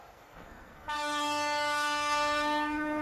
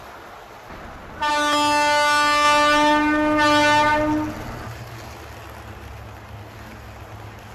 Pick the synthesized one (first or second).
first